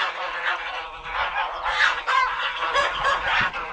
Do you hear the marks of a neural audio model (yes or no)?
yes